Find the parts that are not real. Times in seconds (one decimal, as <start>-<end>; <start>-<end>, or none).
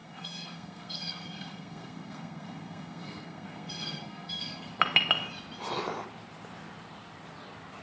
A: 0.0-4.7